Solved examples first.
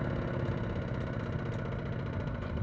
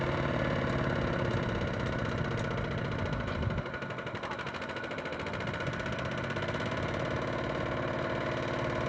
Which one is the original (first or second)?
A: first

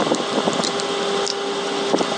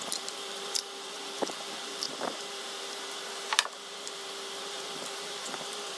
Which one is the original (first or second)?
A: first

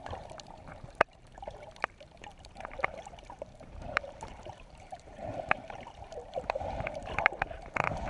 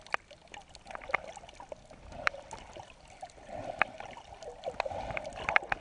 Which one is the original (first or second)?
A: second